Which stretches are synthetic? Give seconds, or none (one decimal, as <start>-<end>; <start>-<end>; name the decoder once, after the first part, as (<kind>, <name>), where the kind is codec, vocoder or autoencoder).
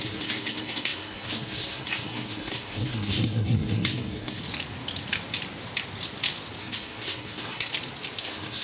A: 0.0-4.4 (codec, SNAC); 6.6-7.7; 8.2-8.6